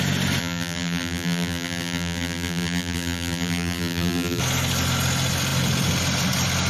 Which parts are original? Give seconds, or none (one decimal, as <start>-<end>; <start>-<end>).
0.0-0.4; 4.4-6.7